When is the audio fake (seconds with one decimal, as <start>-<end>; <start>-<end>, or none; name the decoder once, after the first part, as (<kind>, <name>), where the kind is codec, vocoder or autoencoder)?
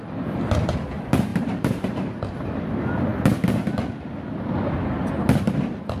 1.3-2.6 (vocoder, BigVGAN v2)